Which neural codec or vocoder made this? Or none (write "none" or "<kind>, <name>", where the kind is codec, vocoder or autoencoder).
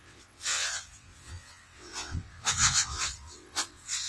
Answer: vocoder, WaveNeXt